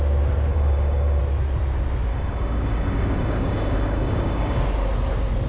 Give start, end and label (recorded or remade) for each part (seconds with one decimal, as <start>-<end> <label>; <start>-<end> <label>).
0.0-0.5 recorded; 0.5-1.2 remade; 1.2-2.1 recorded; 2.1-4.6 remade; 4.6-5.5 recorded